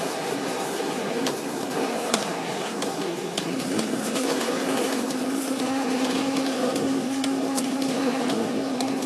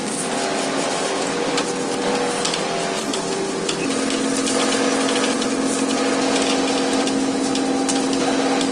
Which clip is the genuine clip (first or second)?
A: second